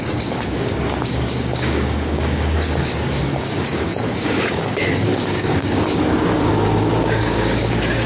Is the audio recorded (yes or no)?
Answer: no